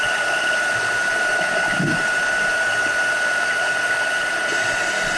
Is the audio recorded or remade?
remade